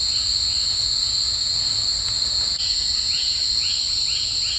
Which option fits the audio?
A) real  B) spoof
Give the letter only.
A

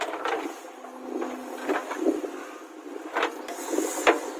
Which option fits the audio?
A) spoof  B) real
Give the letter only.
B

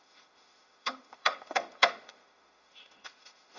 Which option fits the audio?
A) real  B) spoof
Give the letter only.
B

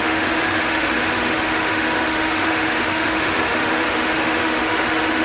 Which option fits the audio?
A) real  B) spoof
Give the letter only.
B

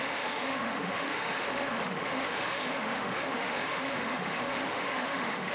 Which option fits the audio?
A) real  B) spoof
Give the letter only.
B